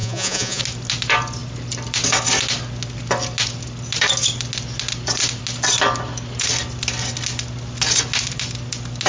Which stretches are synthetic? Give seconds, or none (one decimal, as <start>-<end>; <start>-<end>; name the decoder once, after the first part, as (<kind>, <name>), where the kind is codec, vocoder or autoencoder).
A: 0.0-0.6 (vocoder, Vocos)